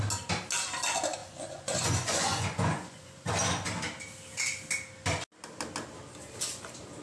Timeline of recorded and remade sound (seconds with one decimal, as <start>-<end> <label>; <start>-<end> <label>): 0.0-1.2 recorded; 1.2-3.3 remade; 3.3-7.0 recorded